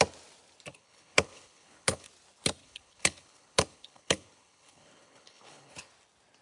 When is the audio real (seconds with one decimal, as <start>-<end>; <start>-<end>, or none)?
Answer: 0.0-0.7; 2.1-2.6; 5.9-6.4